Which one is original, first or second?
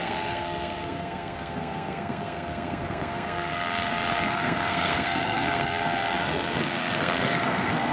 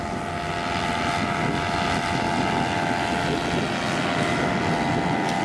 second